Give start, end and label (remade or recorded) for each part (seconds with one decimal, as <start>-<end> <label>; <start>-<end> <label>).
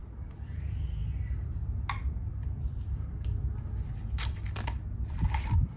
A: 0.0-5.8 recorded